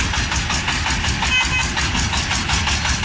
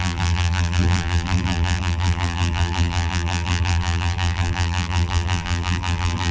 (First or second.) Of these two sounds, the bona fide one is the first